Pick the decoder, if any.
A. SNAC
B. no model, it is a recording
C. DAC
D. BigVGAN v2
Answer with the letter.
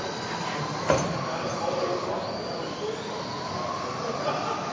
B